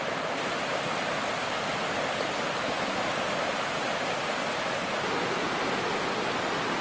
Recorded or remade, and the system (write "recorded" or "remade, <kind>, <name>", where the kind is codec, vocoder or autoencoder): recorded